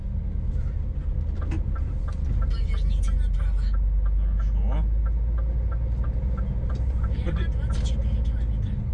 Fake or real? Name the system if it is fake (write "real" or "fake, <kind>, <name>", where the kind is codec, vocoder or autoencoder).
real